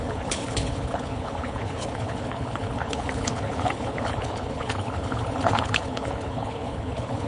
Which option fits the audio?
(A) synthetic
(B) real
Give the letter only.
A